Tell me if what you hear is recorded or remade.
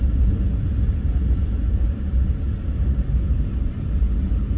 recorded